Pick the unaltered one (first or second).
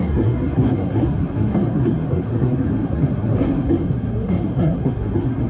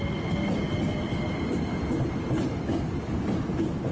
second